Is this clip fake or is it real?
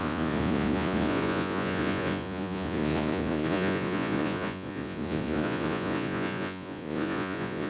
fake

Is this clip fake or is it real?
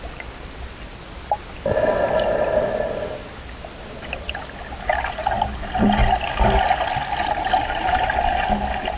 real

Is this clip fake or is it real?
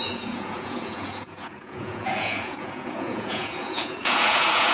fake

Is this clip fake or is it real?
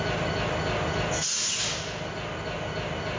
real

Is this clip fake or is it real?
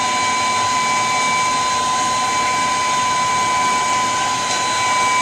real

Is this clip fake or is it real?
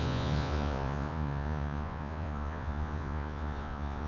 fake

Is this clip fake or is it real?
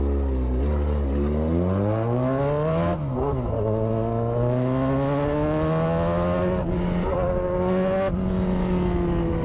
real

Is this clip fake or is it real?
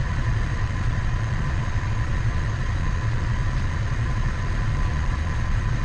fake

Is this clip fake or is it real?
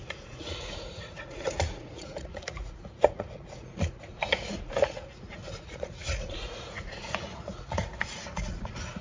fake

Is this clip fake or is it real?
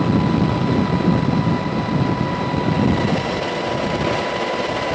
real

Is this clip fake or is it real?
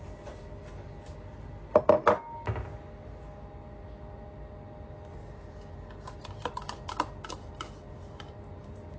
real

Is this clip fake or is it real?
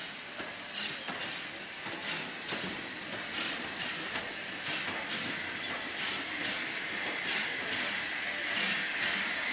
real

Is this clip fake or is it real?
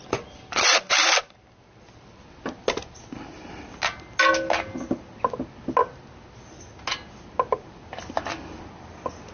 real